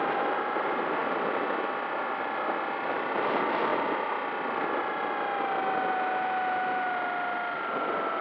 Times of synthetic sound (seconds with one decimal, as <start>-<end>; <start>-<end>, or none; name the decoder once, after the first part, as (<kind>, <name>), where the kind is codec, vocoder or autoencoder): none